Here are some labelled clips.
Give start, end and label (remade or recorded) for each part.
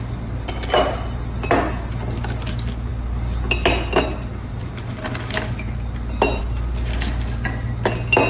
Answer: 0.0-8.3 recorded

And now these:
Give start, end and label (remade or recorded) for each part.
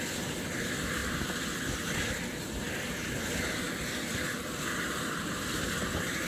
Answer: 0.0-6.3 recorded